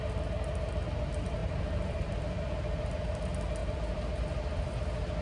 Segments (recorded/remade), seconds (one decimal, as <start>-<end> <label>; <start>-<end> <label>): 0.0-1.4 recorded; 1.4-2.5 remade; 2.5-3.6 recorded; 3.6-4.2 remade; 4.2-5.2 recorded

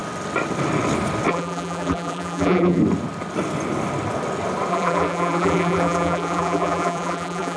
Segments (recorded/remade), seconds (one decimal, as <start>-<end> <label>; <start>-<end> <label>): 0.0-1.3 recorded; 1.3-2.8 remade; 2.8-4.7 recorded; 4.7-7.6 remade

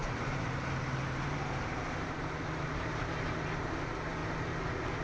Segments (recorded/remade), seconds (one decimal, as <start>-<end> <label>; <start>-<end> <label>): 0.0-3.0 remade; 3.0-5.0 recorded

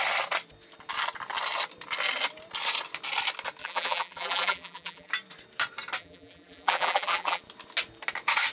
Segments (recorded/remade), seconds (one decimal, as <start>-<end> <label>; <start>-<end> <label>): 0.0-3.6 recorded; 3.6-5.1 remade; 5.1-6.0 recorded; 6.0-7.4 remade; 7.4-8.5 recorded

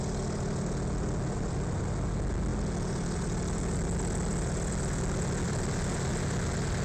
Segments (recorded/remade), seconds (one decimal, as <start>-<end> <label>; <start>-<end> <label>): 0.0-6.8 recorded

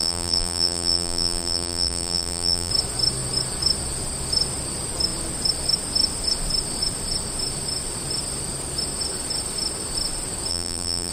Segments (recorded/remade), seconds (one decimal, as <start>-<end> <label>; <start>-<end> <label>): 0.0-2.7 remade; 2.7-10.5 recorded; 10.5-11.1 remade

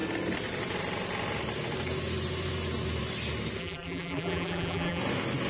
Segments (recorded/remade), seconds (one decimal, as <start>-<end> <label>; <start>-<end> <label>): 0.0-3.6 recorded; 3.6-5.0 remade; 5.0-5.5 recorded

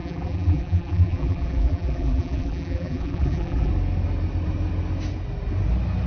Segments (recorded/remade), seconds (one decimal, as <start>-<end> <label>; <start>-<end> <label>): 0.0-3.7 remade; 3.7-6.1 recorded